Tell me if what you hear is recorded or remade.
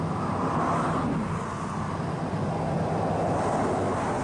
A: recorded